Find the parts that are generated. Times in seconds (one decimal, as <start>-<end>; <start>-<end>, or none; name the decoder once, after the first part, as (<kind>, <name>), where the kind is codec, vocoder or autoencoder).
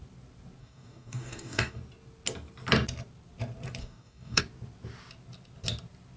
0.6-1.8 (codec, DAC); 3.8-4.4